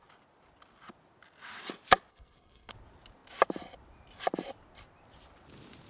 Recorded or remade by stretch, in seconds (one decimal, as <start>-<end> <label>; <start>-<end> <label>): 0.0-2.1 recorded; 2.1-2.7 remade; 2.7-5.9 recorded